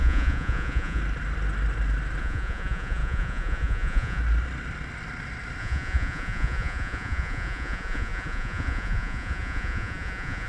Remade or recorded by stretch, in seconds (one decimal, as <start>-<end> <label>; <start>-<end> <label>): 0.0-1.0 remade; 1.0-2.2 recorded; 2.2-4.2 remade; 4.2-5.6 recorded; 5.6-10.5 remade